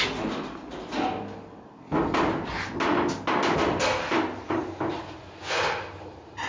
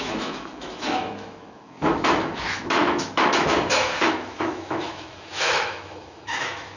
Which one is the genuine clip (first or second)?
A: first